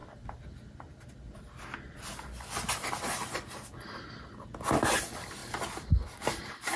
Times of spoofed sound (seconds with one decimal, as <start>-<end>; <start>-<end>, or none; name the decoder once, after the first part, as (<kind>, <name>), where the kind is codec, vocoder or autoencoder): none